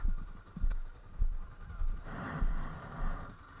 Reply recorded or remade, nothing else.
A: remade